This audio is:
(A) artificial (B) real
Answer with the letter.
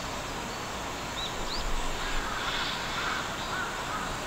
B